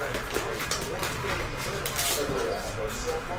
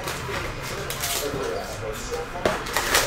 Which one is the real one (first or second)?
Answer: first